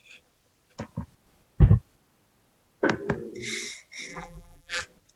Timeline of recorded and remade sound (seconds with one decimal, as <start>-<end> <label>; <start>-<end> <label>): 0.0-4.1 recorded; 4.1-4.8 remade; 4.8-5.2 recorded